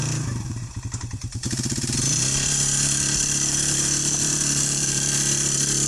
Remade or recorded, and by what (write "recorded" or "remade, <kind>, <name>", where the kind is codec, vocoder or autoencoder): remade, vocoder, BigVGAN v2